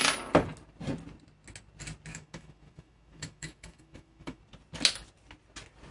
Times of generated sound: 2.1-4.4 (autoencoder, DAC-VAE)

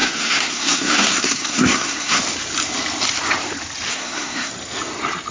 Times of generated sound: 0.0-2.2 (codec, SNAC); 3.9-4.5

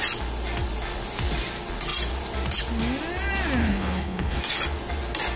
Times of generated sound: 3.6-4.4 (codec, HILCodec)

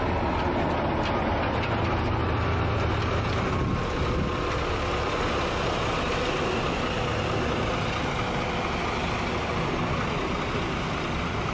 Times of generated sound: none

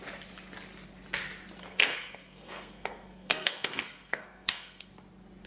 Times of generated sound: 1.6-4.9 (codec, SNAC)

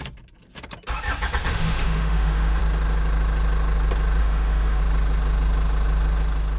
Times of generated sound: 1.4-2.6 (autoencoder, DAC-VAE); 4.2-4.8